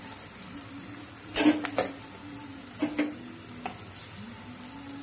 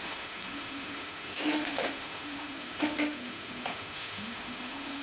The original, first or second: first